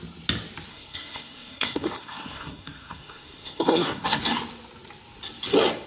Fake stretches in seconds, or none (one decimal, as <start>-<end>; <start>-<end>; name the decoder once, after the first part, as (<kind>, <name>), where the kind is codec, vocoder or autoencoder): 0.7-4.2 (codec, SNAC)